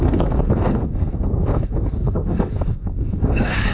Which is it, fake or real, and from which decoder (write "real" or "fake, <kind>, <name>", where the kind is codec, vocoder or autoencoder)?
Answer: fake, codec, SNAC